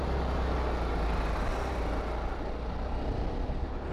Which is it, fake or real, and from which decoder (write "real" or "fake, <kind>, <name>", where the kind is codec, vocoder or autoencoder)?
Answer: real